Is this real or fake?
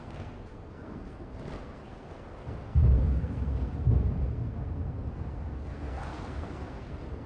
fake